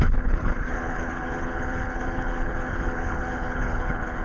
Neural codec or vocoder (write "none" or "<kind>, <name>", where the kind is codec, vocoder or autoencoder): codec, HILCodec